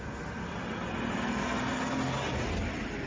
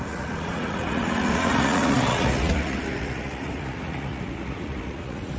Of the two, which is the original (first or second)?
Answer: first